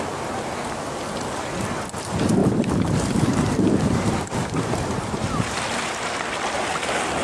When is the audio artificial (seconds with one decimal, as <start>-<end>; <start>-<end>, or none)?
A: 2.4-5.6